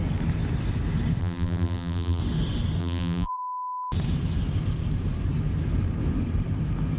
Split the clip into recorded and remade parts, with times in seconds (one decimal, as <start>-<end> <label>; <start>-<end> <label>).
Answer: 0.0-1.2 recorded; 1.2-2.2 remade; 2.2-2.8 recorded; 2.8-3.4 remade; 3.4-7.0 recorded

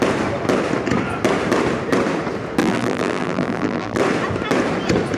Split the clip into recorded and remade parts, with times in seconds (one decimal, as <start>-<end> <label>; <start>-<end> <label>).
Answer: 0.0-2.6 recorded; 2.6-4.0 remade; 4.0-5.2 recorded